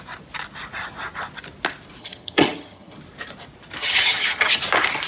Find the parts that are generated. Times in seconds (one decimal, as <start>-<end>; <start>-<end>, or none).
2.0-3.0; 3.8-4.6